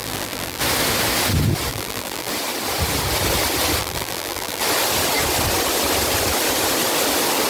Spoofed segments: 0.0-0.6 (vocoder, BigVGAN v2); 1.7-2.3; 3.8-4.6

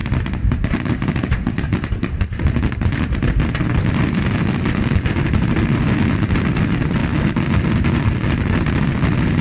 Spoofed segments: none

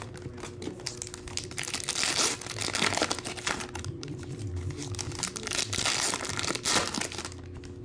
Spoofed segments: 3.9-4.5 (vocoder, BigVGAN v2)

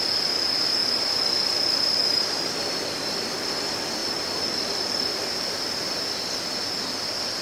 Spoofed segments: 0.8-2.8 (vocoder, BigVGAN v2); 4.0-5.0

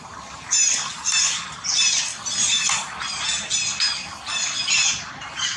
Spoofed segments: 0.0-2.1 (vocoder, BigVGAN v2); 5.1-5.6

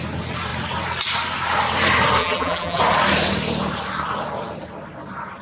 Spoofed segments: 2.2-2.8 (vocoder, BigVGAN v2)

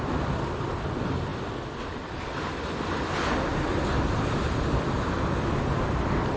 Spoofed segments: 3.5-4.4 (vocoder, BigVGAN v2)